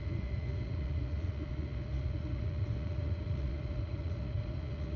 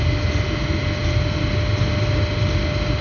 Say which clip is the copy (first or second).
first